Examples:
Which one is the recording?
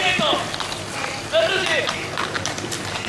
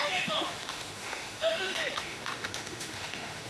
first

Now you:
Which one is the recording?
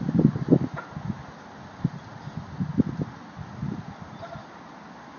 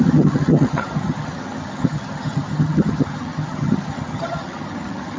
first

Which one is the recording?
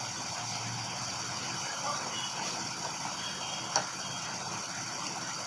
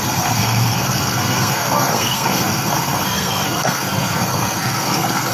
first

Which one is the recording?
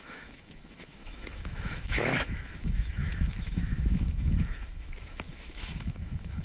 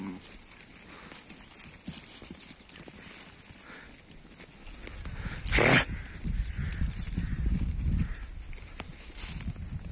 second